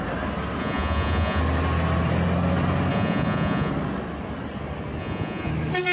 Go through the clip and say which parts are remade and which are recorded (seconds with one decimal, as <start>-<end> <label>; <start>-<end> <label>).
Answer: 0.0-0.6 recorded; 0.6-1.4 remade; 1.4-2.9 recorded; 2.9-3.7 remade; 3.7-5.0 recorded; 5.0-5.5 remade; 5.5-5.9 recorded